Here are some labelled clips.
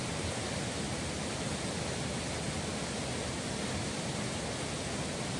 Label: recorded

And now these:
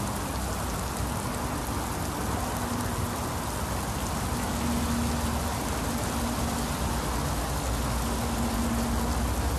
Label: recorded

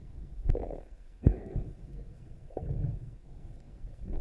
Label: remade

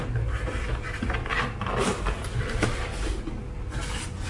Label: recorded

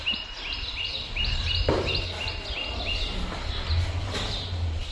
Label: recorded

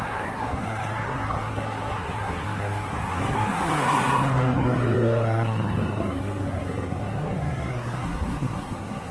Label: remade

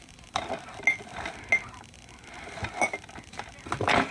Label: recorded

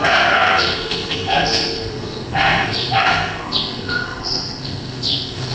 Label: remade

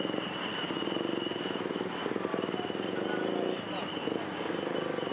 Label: recorded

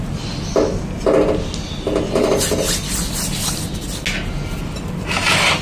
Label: recorded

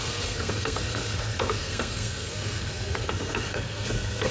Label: remade